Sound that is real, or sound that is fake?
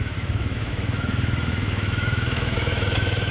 fake